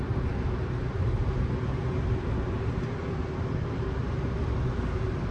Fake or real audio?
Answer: real